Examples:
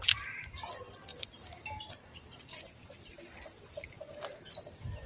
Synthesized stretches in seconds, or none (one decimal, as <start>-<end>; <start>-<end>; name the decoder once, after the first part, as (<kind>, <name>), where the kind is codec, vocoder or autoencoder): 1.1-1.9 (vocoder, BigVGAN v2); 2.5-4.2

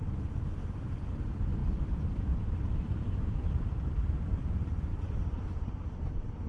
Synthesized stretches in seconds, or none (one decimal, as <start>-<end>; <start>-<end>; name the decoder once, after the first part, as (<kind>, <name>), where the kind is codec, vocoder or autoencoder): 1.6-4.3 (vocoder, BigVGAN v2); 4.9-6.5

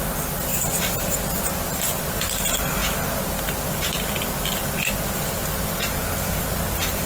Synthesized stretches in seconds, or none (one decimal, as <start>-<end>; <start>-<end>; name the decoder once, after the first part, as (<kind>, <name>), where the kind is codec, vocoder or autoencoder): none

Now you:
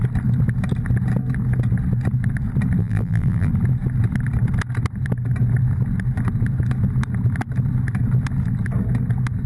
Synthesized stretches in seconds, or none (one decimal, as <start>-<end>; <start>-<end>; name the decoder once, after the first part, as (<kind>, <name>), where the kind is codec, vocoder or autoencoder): 2.8-3.5 (vocoder, BigVGAN v2)